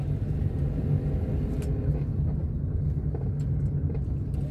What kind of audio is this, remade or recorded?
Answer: recorded